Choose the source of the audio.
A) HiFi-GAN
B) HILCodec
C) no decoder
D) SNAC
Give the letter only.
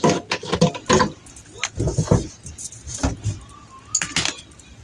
C